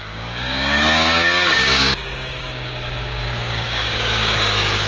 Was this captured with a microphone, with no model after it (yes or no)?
no